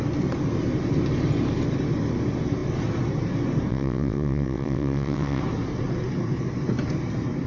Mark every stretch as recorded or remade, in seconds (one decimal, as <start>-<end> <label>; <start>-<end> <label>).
0.0-3.7 recorded; 3.7-5.4 remade; 5.4-7.5 recorded